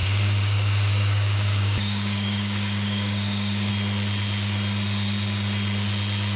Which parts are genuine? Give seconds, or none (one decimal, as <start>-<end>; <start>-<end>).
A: 3.7-6.4